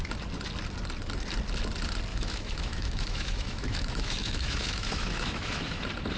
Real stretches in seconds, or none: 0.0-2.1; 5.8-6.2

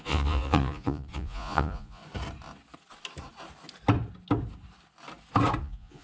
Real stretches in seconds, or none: 2.0-5.6